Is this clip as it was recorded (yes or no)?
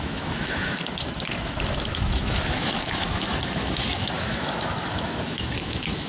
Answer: no